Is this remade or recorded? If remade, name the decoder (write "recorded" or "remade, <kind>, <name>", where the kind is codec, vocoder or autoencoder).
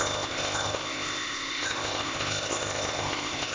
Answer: remade, codec, ZipCodec